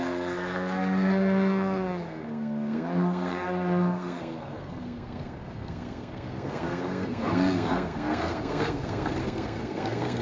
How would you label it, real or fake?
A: fake